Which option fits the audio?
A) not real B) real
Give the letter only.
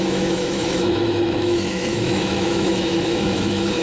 A